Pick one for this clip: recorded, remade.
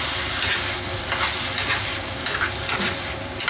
recorded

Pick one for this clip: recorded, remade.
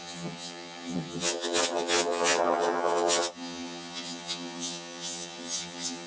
remade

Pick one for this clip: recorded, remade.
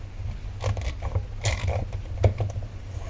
recorded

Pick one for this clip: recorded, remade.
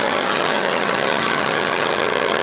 remade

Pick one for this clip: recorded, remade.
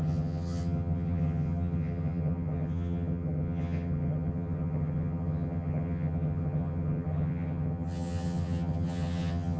remade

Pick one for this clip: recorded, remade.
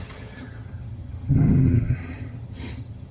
remade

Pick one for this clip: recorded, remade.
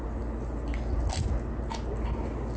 recorded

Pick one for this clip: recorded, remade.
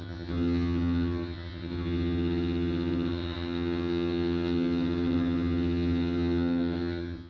remade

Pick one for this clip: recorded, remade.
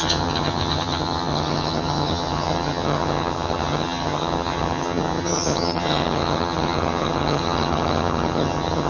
remade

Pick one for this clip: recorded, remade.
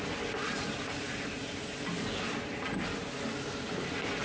recorded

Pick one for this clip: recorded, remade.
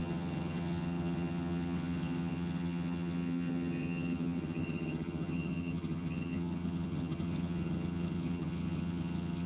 remade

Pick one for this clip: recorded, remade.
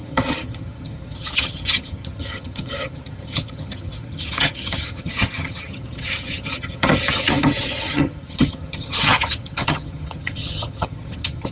remade